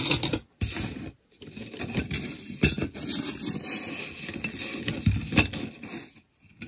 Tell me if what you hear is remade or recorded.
recorded